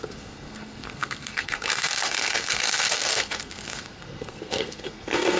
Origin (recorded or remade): remade